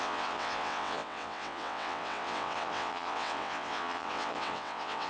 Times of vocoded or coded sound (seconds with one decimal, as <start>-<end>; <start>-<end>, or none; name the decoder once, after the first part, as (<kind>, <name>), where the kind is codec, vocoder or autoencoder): 0.0-5.1 (vocoder, WaveNeXt)